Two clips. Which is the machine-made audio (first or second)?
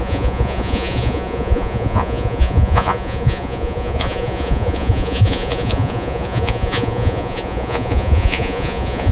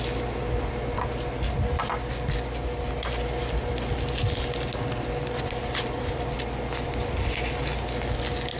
first